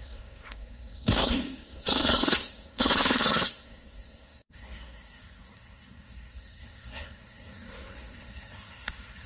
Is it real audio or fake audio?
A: fake